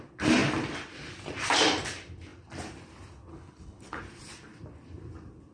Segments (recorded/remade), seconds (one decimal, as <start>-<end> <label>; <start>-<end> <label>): 0.0-3.3 recorded; 3.3-4.0 remade; 4.0-5.5 recorded